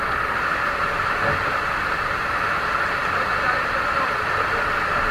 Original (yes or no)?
no